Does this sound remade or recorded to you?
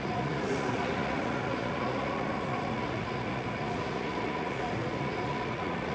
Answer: remade